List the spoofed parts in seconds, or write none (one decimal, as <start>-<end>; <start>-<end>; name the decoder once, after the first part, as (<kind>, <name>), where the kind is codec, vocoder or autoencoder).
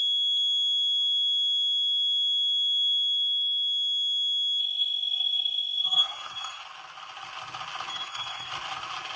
4.6-6.6 (codec, SNAC); 7.9-8.5